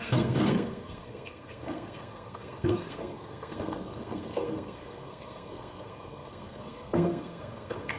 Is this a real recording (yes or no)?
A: no